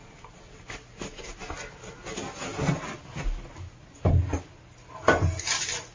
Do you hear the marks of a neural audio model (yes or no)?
no